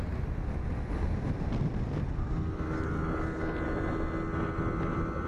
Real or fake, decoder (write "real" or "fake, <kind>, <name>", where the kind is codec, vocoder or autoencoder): real